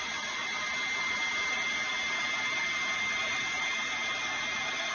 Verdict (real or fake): real